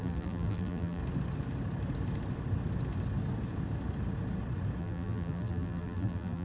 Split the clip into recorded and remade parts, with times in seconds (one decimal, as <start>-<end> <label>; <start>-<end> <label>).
0.0-1.0 remade; 1.0-4.8 recorded; 4.8-6.4 remade